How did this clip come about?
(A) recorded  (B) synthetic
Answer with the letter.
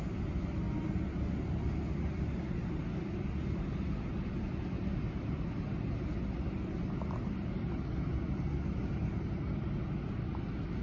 A